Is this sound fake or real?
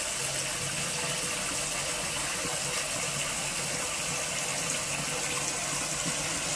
real